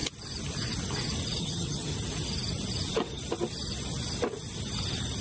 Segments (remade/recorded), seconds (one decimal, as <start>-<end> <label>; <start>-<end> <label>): 0.0-1.4 recorded; 1.4-1.9 remade; 1.9-5.2 recorded